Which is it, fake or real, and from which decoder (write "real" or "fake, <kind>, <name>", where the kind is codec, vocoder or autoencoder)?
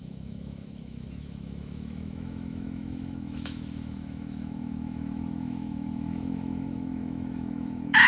fake, autoencoder, DAC-VAE